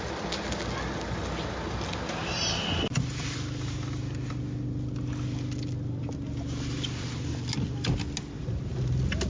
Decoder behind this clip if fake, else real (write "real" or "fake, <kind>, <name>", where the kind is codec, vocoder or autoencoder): real